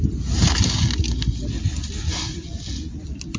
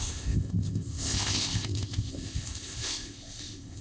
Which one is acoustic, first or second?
first